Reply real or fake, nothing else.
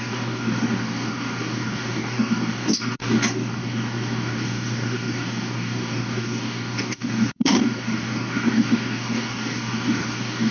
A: fake